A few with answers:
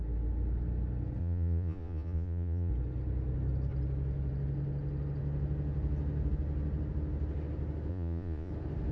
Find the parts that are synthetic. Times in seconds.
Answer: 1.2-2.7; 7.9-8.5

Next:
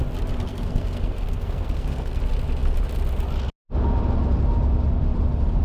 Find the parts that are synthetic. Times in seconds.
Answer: 0.5-2.2